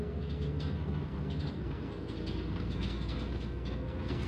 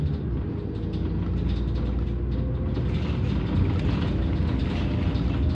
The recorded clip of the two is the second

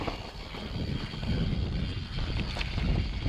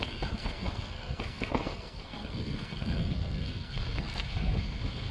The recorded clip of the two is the first